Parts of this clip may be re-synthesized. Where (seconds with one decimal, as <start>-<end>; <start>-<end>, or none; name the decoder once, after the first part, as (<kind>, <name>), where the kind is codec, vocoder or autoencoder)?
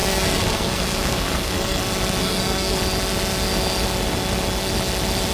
0.0-1.8 (codec, SNAC); 2.2-2.8